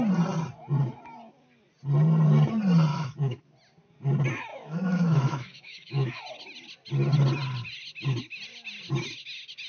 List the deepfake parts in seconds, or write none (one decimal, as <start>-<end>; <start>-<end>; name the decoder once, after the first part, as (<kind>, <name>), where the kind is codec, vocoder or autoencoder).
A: 2.9-3.4 (autoencoder, DAC-VAE); 4.5-6.2